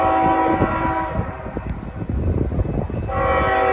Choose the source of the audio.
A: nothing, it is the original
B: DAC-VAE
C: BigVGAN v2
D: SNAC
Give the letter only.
A